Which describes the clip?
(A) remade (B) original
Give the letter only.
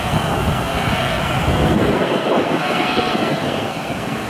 A